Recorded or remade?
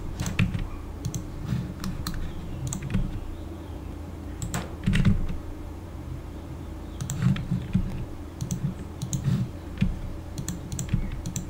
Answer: remade